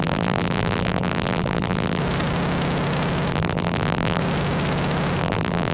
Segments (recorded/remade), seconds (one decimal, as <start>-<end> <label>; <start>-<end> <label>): 0.0-2.0 remade; 2.0-3.3 recorded; 3.3-4.2 remade; 4.2-5.2 recorded; 5.2-5.7 remade